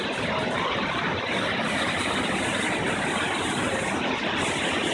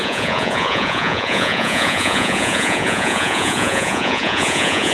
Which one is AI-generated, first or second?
second